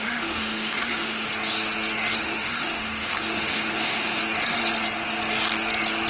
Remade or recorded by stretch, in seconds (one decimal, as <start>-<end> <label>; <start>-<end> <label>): 0.0-1.3 remade; 1.3-2.2 recorded; 2.2-4.2 remade; 4.2-6.1 recorded